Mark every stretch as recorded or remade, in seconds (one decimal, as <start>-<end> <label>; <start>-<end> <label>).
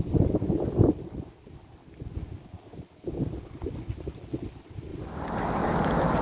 0.0-6.2 recorded